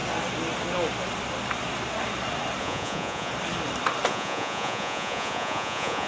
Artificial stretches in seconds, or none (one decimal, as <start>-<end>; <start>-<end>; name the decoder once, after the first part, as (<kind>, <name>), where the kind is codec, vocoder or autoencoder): 2.6-3.3 (vocoder, Vocos); 4.1-6.1